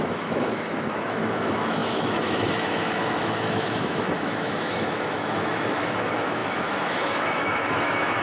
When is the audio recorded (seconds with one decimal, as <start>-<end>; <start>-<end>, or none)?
none